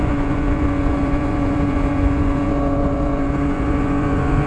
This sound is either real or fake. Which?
fake